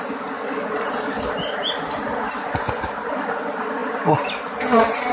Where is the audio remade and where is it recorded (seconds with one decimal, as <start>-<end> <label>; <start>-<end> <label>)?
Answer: 0.0-5.1 recorded